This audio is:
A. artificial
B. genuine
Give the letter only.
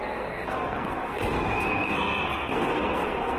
A